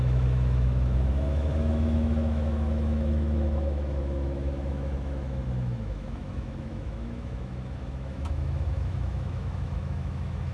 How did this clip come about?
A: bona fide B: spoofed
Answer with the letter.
B